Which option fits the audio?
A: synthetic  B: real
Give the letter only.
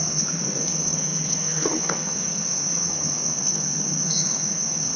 A